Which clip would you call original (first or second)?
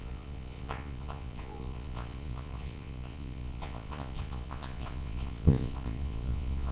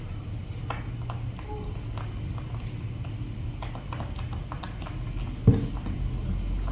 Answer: second